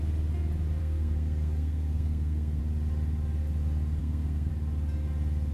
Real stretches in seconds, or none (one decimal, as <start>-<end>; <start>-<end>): 0.0-0.8; 2.6-4.0; 4.5-5.5